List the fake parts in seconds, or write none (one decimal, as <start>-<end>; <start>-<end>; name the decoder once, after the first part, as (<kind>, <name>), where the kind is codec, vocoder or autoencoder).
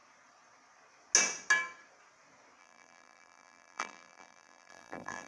2.6-5.3 (vocoder, BigVGAN v2)